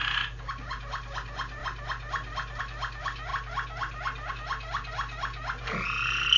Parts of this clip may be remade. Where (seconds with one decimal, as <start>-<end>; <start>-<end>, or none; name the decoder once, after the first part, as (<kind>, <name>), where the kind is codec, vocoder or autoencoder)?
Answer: none